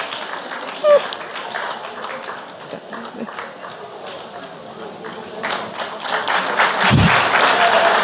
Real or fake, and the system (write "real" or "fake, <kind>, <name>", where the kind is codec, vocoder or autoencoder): real